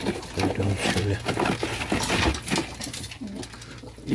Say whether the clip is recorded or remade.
recorded